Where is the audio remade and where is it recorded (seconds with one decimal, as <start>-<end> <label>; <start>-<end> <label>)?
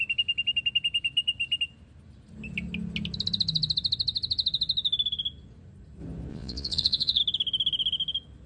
0.0-6.3 recorded; 6.3-7.2 remade; 7.2-8.5 recorded